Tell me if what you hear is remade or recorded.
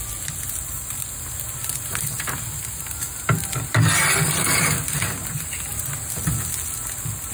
recorded